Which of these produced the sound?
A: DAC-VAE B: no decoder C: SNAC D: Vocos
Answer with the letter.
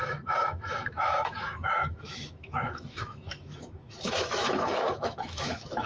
A